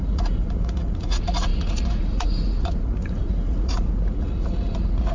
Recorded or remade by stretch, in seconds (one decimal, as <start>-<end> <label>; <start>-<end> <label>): 0.0-5.1 remade